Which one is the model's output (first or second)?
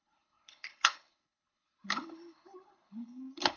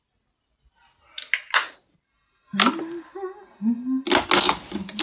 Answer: first